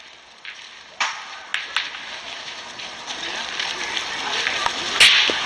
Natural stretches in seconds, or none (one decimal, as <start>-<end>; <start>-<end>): 0.0-5.5